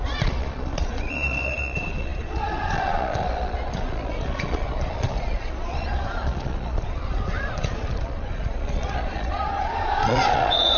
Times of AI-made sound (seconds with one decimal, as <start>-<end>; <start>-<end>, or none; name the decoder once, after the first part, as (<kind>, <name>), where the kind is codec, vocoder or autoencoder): 0.0-10.8 (vocoder, Vocos)